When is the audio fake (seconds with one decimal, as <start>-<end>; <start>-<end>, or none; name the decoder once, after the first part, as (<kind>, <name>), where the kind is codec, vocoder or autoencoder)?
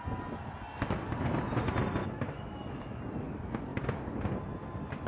2.0-3.0 (autoencoder, DAC-VAE)